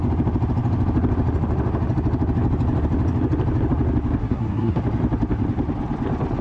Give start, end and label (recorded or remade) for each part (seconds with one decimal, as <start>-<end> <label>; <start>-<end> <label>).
0.0-4.2 recorded; 4.2-4.8 remade; 4.8-6.4 recorded